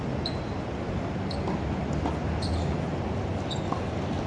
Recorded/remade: recorded